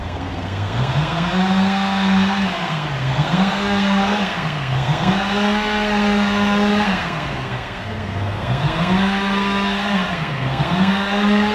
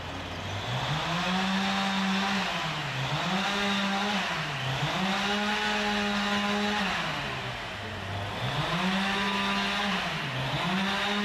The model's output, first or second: first